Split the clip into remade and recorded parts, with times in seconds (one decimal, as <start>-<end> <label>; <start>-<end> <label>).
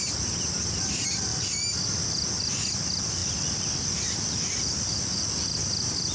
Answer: 0.0-6.1 recorded